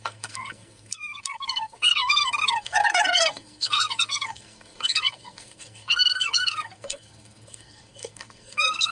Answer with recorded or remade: remade